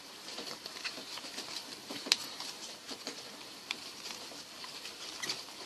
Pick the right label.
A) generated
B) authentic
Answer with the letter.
A